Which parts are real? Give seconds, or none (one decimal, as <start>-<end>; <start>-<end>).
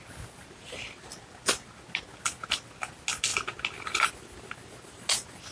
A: 0.0-5.5